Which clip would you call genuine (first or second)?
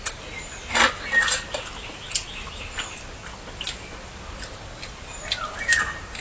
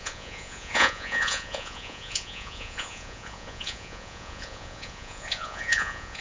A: first